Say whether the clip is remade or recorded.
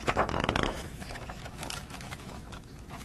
remade